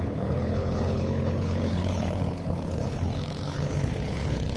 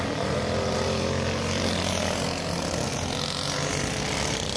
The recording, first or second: second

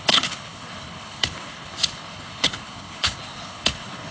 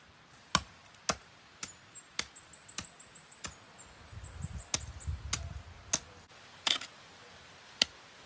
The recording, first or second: second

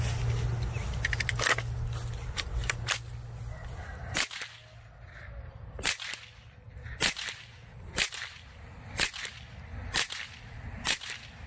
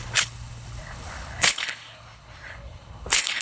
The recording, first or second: first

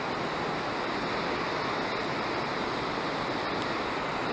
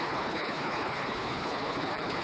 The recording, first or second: first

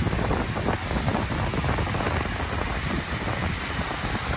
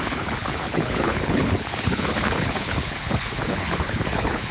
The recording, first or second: first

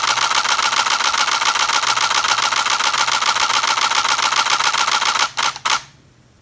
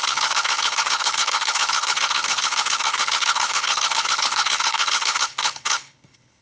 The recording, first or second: first